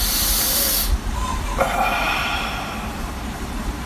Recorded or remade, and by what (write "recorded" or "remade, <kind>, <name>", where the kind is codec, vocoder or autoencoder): remade, vocoder, BigVGAN v2